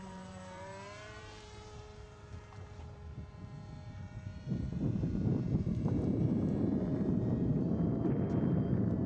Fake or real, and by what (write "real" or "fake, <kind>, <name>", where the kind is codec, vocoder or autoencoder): fake, vocoder, BigVGAN v2